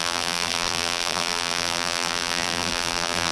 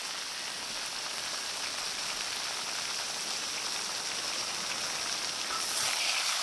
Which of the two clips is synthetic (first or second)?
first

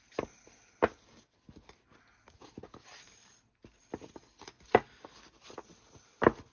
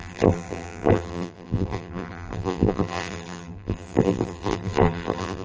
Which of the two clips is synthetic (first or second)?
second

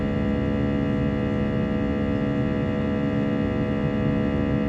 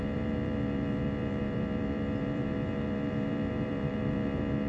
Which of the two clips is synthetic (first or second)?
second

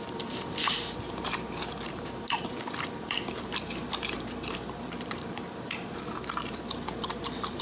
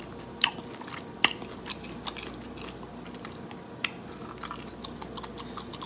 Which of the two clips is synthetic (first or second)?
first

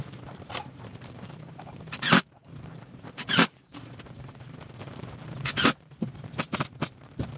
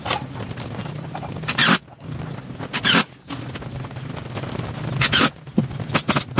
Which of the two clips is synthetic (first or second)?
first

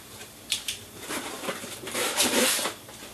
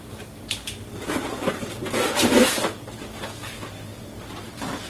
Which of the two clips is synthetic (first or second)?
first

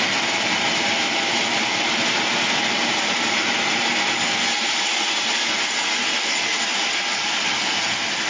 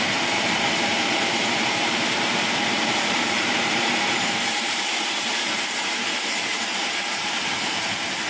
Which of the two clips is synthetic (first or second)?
second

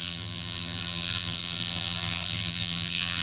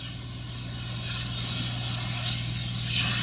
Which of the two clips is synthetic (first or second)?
first